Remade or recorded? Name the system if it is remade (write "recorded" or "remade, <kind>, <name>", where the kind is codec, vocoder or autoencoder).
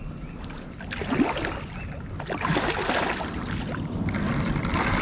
recorded